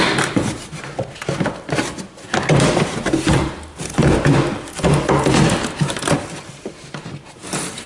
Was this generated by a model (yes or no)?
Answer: yes